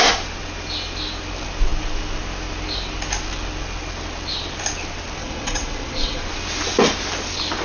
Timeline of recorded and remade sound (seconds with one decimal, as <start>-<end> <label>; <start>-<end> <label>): 0.0-5.2 recorded; 5.2-6.2 remade; 6.2-7.6 recorded